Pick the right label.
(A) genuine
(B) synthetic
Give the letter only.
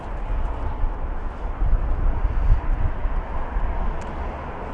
A